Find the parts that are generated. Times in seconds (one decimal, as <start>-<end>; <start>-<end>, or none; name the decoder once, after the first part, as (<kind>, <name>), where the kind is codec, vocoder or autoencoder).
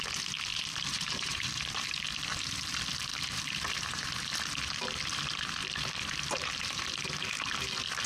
0.5-1.6 (vocoder, BigVGAN v2); 3.1-4.4